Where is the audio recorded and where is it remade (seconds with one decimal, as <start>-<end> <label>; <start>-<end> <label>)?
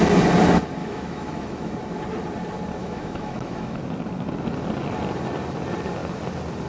0.0-0.8 recorded; 0.8-1.7 remade; 1.7-2.8 recorded; 2.8-3.8 remade; 3.8-6.7 recorded